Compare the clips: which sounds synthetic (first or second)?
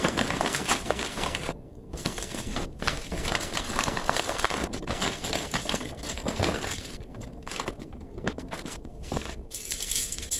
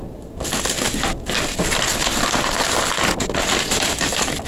first